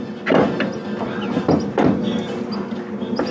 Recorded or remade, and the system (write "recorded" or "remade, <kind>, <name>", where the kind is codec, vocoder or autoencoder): recorded